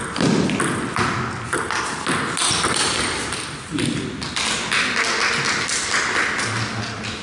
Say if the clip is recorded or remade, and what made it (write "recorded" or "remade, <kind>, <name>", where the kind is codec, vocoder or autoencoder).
recorded